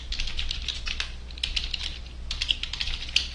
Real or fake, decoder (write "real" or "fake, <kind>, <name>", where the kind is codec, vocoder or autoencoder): real